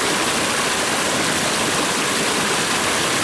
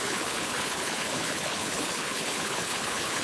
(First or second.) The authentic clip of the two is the first